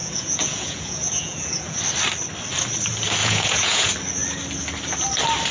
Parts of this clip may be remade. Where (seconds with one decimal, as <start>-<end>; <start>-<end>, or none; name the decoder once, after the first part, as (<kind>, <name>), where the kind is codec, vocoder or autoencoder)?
0.0-1.8 (vocoder, Vocos); 3.2-3.9